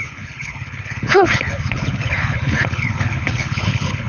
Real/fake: fake